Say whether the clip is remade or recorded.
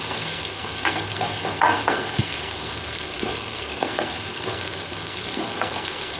remade